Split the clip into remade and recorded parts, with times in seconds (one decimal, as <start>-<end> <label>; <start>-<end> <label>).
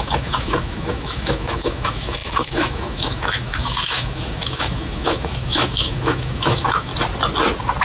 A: 0.0-6.9 remade; 6.9-7.8 recorded